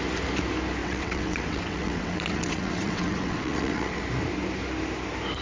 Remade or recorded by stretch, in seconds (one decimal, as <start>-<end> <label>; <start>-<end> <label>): 0.0-0.8 recorded; 0.8-4.0 remade; 4.0-5.4 recorded